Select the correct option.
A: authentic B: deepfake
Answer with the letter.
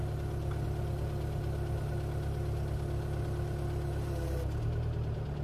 A